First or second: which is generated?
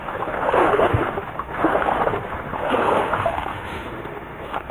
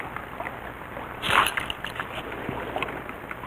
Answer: first